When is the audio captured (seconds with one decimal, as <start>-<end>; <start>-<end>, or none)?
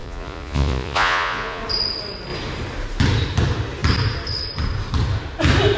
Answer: 1.6-5.8